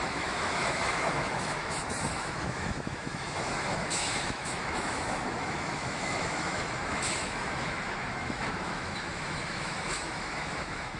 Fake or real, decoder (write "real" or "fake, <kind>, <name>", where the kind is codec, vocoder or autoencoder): fake, autoencoder, DAC-VAE